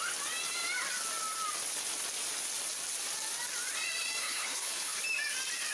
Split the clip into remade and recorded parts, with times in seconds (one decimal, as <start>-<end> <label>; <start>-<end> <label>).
0.0-4.2 recorded; 4.2-5.0 remade; 5.0-5.7 recorded